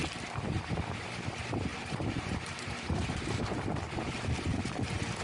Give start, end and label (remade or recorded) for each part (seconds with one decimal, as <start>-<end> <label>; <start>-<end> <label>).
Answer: 0.0-1.7 recorded; 1.7-3.8 remade; 3.8-4.5 recorded; 4.5-5.2 remade